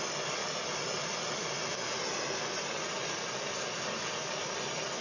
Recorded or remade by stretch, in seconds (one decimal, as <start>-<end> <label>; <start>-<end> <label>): 0.0-5.0 recorded